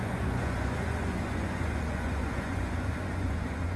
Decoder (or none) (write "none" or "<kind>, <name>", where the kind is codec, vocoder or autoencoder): vocoder, Vocos